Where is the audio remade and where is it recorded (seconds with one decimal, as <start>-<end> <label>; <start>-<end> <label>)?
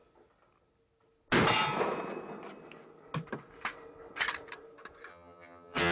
0.0-5.1 recorded; 5.1-5.9 remade